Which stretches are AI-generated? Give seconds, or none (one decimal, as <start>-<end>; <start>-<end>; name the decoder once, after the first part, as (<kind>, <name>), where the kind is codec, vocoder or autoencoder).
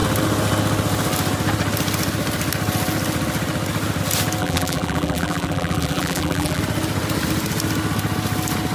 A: 4.4-6.6 (vocoder, BigVGAN v2)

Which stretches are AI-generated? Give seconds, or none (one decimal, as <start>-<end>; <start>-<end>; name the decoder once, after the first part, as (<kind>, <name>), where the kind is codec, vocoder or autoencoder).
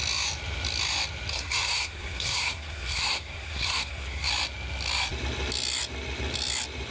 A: 1.3-4.3 (codec, SNAC)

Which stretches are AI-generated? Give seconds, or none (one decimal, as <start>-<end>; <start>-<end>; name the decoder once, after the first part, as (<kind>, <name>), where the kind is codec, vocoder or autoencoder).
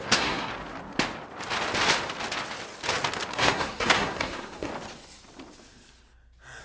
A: 0.0-0.5 (codec, SNAC); 3.3-4.7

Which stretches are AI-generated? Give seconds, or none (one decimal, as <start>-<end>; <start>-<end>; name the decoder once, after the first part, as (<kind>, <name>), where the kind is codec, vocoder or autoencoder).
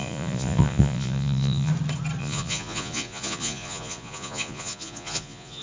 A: 0.0-1.7 (vocoder, Vocos); 2.2-5.6